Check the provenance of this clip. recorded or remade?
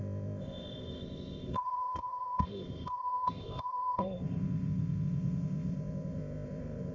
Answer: remade